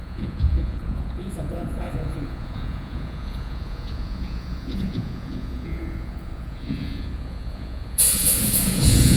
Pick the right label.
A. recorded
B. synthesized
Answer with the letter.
B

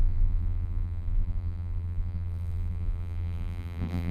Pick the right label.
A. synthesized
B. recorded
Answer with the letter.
A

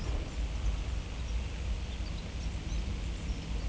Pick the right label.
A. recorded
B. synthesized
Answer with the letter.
A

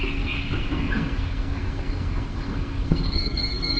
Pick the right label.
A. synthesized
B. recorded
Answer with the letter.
A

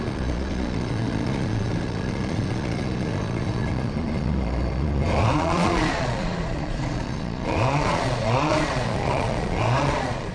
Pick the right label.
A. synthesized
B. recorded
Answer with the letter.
A